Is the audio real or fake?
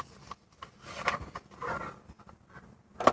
real